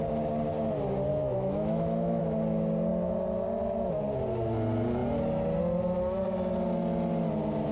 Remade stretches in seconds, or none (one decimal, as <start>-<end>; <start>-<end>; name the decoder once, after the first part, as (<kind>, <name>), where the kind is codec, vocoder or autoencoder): 1.1-2.2 (autoencoder, DAC-VAE)